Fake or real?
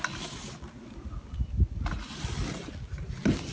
real